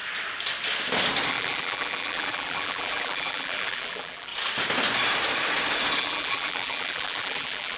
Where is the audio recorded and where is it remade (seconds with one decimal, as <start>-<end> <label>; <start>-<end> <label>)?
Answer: 0.0-1.3 recorded; 1.3-4.3 remade; 4.3-6.0 recorded; 6.0-7.8 remade